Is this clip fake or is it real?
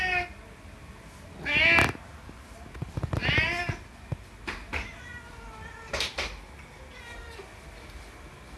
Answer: real